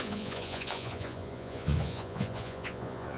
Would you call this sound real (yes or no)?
no